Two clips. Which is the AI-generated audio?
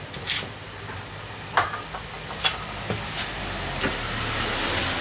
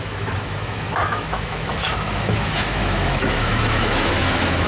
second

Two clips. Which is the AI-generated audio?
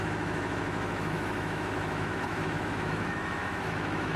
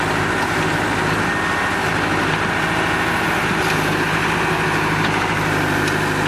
first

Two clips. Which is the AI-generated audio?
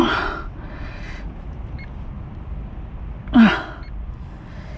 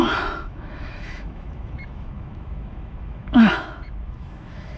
second